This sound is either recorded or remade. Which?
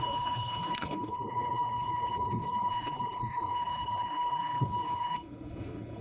remade